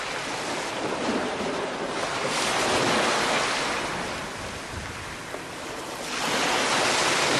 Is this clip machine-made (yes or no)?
no